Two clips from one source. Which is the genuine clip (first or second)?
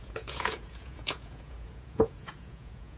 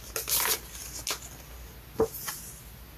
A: second